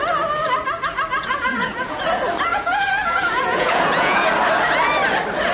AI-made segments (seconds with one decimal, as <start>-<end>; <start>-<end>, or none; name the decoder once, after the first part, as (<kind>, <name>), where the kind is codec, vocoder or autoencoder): 1.2-2.0 (vocoder, Vocos); 2.5-4.3